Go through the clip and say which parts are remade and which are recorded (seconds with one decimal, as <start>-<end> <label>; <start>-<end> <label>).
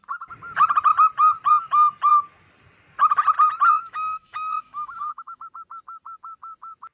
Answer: 0.0-3.7 recorded; 3.7-5.5 remade; 5.5-6.9 recorded